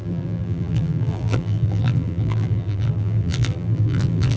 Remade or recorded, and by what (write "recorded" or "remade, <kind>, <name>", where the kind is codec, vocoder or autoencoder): remade, vocoder, BigVGAN v2